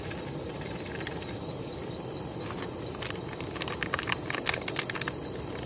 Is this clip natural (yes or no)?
yes